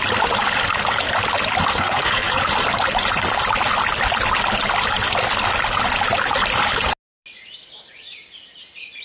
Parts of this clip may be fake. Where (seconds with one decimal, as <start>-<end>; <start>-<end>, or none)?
1.7-2.3